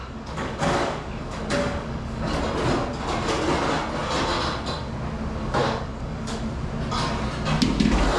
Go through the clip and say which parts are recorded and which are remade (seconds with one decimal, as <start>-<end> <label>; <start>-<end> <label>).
0.0-2.4 remade; 2.4-5.6 recorded; 5.6-6.4 remade; 6.4-8.2 recorded